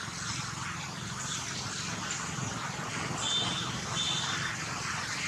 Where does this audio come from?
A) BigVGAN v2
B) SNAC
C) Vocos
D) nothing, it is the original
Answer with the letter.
D